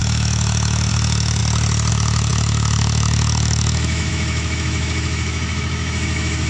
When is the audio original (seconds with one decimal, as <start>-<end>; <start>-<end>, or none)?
1.4-1.9